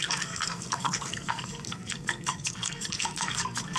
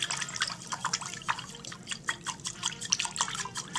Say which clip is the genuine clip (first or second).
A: second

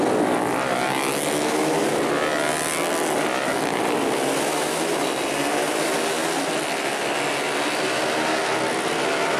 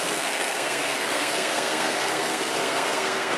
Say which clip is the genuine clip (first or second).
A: first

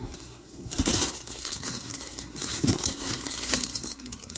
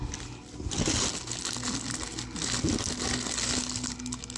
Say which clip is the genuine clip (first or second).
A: second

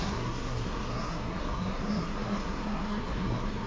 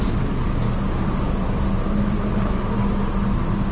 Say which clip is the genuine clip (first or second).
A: second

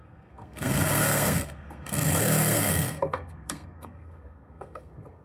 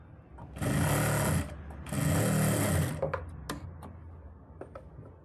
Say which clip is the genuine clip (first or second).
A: second